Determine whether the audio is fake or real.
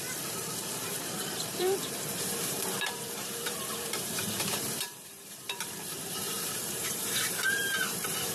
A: fake